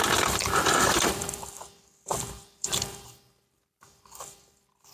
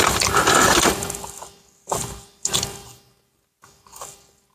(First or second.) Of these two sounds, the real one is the second